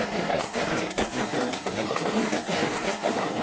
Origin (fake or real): fake